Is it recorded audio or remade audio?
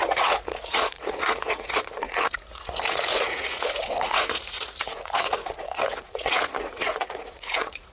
remade